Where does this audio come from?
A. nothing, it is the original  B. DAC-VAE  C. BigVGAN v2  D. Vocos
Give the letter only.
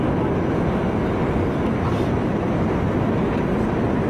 A